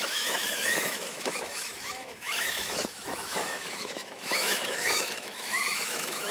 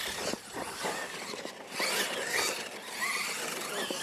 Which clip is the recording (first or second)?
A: second